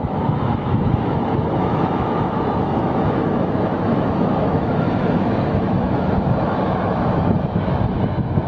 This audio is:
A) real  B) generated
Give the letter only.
B